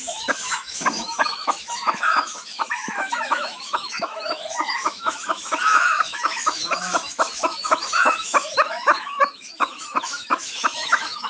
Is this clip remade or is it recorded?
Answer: remade